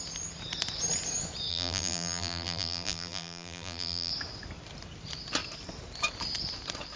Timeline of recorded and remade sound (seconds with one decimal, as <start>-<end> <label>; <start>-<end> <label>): 0.0-1.5 recorded; 1.5-4.1 remade; 4.1-7.0 recorded